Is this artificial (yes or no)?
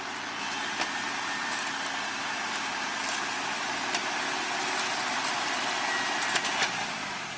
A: no